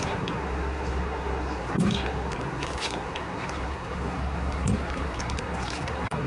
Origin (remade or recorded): remade